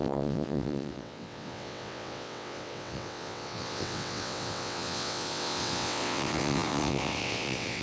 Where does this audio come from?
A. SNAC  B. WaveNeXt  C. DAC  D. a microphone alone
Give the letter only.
B